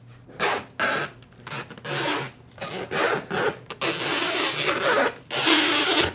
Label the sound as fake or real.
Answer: real